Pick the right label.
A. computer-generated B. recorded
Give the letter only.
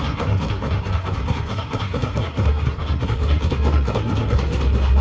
A